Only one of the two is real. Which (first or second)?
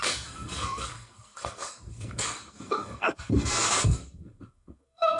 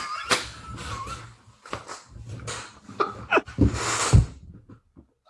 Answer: second